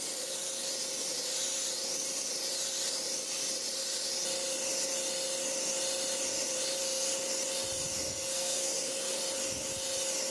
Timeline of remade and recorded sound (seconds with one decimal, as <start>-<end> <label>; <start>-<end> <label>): 0.0-8.1 recorded; 8.1-9.2 remade; 9.2-10.3 recorded

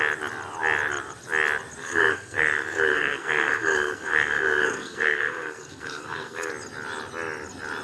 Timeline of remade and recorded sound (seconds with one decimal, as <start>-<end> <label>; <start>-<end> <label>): 0.0-1.8 recorded; 1.8-6.5 remade; 6.5-7.8 recorded

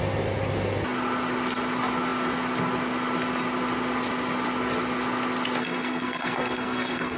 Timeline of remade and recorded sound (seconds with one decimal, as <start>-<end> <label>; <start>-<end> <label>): 0.0-5.6 recorded; 5.6-7.2 remade